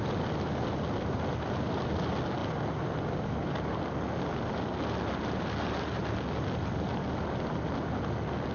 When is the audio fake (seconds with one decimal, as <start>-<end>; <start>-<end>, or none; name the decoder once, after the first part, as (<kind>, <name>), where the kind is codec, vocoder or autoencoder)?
none